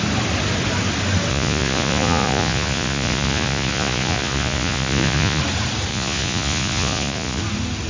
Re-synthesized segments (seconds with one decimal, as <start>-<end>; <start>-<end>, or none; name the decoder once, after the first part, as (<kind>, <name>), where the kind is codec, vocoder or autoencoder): 1.3-5.4 (vocoder, Vocos); 5.9-7.4